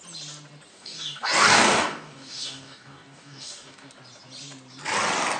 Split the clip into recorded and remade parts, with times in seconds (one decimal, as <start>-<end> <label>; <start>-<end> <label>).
0.0-0.7 recorded; 0.7-3.9 remade; 3.9-5.4 recorded